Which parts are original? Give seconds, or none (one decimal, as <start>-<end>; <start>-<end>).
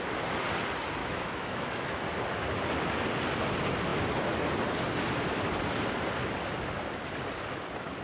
0.0-1.0; 2.0-8.0